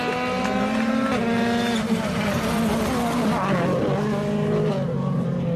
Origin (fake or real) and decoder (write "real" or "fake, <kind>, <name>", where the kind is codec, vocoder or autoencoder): real